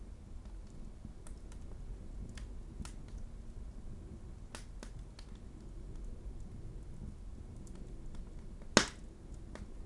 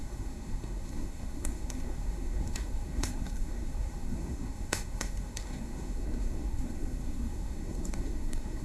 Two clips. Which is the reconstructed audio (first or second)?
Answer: second